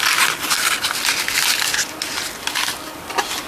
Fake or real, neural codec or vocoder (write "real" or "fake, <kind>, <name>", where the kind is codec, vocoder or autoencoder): real